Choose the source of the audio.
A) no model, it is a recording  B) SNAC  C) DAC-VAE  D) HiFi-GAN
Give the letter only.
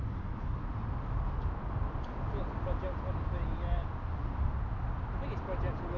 A